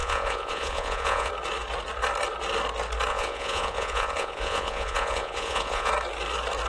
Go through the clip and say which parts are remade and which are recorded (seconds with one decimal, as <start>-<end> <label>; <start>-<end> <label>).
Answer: 0.0-1.3 remade; 1.3-3.1 recorded; 3.1-5.9 remade; 5.9-6.7 recorded